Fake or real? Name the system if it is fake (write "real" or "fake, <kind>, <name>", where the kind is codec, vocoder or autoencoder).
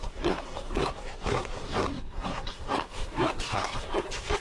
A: fake, codec, SNAC